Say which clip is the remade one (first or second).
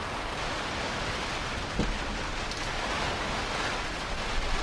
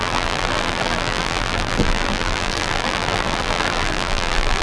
second